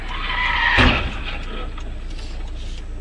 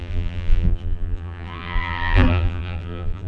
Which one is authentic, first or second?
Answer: first